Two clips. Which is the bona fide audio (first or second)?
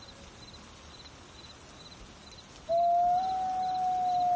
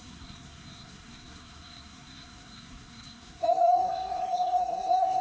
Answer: first